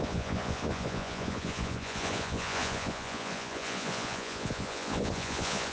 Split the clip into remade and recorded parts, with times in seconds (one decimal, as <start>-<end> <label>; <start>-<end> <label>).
0.0-5.7 remade